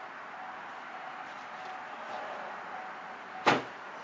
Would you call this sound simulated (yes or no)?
no